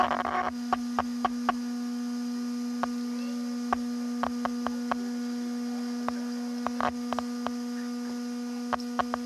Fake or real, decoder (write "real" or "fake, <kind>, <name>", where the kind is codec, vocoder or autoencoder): real